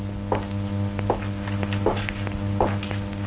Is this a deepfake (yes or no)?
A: no